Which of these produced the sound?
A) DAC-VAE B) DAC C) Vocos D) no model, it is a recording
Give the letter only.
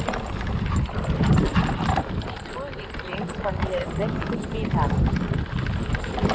D